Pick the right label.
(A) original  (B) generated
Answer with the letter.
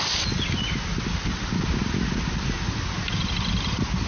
A